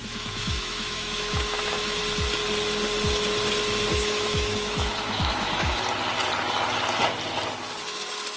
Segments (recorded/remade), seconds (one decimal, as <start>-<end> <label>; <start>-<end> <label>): 0.0-2.0 remade; 2.0-3.9 recorded; 3.9-5.8 remade; 5.8-8.4 recorded